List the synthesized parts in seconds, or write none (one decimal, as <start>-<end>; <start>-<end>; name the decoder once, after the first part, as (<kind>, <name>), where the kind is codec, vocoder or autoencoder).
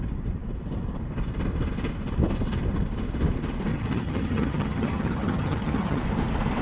3.7-6.0 (vocoder, HiFi-GAN)